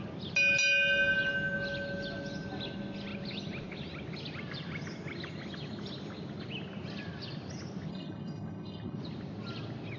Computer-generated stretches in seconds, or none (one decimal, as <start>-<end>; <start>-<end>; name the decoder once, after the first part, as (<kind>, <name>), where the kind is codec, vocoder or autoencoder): 7.9-9.0 (codec, HILCodec)